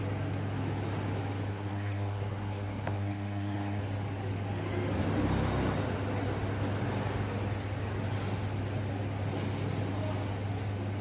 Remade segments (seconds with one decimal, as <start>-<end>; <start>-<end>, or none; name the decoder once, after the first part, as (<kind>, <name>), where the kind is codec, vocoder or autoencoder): 1.5-3.8 (codec, SNAC)

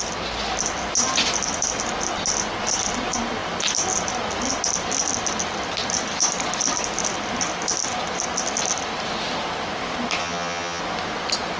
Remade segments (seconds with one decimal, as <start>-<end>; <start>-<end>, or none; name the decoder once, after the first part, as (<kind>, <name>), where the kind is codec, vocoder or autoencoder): 10.2-10.8 (vocoder, HiFi-GAN)

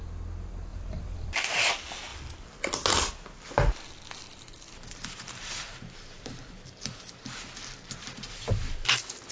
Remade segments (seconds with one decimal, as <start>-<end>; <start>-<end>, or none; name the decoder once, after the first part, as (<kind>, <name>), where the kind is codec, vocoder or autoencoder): 0.7-1.7 (vocoder, BigVGAN v2); 2.1-3.1; 4.2-7.1

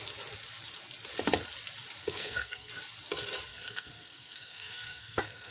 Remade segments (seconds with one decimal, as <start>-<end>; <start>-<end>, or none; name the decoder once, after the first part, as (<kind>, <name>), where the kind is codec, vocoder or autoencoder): 2.0-2.7 (codec, SNAC); 3.5-5.5

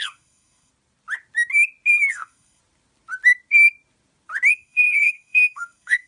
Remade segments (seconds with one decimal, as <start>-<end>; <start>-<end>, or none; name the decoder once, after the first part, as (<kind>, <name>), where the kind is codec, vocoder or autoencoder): 0.0-0.7 (codec, SNAC); 2.1-2.6; 4.5-6.1

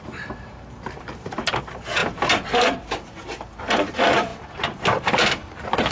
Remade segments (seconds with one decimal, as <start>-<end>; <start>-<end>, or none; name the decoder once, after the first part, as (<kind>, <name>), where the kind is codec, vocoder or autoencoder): 0.0-2.0 (vocoder, BigVGAN v2); 3.6-4.3; 4.8-5.9

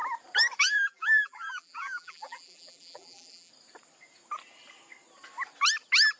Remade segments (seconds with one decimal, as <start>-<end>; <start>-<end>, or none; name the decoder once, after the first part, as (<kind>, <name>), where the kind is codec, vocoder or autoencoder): 0.6-3.5 (vocoder, BigVGAN v2)